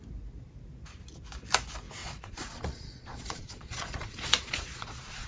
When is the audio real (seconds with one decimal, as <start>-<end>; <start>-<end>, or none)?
0.0-2.0

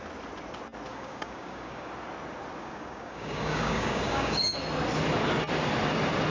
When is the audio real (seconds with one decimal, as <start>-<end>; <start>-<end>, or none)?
0.0-0.9; 1.9-2.6; 4.4-6.3